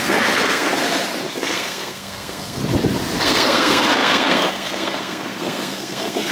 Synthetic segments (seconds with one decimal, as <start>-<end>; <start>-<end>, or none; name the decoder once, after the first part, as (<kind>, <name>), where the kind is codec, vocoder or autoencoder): 0.0-0.7 (codec, SNAC); 1.3-2.6; 3.2-6.3